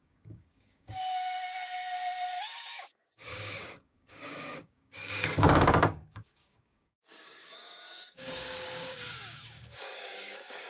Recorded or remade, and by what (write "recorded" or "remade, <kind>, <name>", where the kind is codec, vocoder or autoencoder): remade, codec, DAC